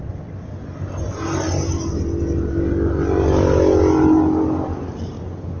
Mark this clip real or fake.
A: real